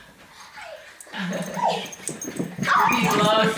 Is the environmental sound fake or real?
real